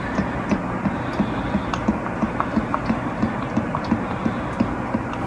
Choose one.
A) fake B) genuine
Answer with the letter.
B